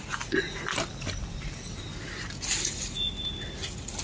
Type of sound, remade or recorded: recorded